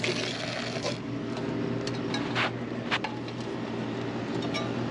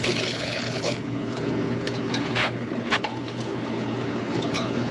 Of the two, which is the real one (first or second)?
first